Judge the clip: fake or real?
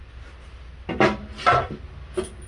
real